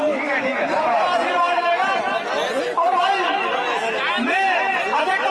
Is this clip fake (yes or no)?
no